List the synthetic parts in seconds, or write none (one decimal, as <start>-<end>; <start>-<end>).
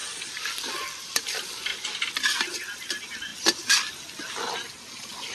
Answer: 0.0-1.7; 2.4-5.3